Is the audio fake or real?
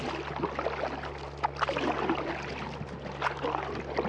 real